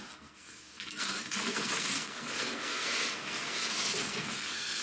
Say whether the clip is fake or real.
fake